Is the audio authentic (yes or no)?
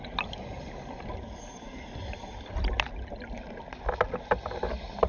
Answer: yes